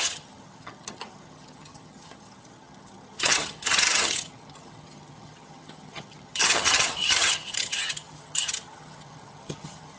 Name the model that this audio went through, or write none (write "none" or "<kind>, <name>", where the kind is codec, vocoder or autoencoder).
vocoder, HiFi-GAN